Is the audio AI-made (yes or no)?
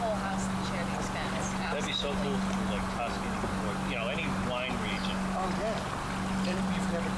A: no